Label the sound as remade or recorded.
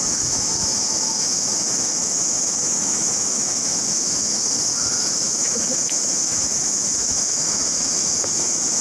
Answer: remade